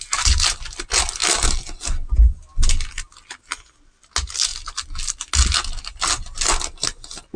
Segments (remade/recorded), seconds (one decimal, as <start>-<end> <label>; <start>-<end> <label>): 0.0-7.4 recorded